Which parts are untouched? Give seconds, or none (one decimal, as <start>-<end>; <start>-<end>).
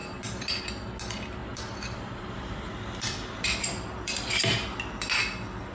0.6-1.4; 4.3-5.7